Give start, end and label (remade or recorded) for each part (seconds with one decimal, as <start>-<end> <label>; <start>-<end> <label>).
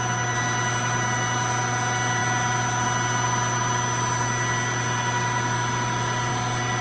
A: 0.0-6.8 recorded